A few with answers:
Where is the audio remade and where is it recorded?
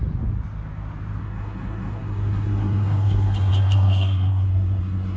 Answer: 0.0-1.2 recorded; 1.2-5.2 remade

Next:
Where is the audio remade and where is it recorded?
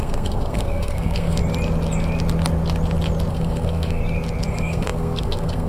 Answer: 0.0-1.4 remade; 1.4-3.3 recorded; 3.3-4.0 remade; 4.0-4.5 recorded; 4.5-5.7 remade